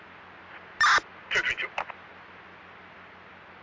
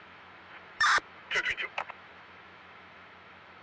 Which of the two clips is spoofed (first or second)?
second